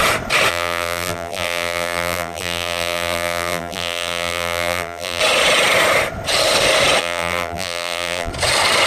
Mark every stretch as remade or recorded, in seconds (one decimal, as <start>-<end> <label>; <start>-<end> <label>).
0.0-0.5 recorded; 0.5-5.2 remade; 5.2-7.0 recorded; 7.0-8.3 remade; 8.3-8.9 recorded